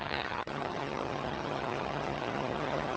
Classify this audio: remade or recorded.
remade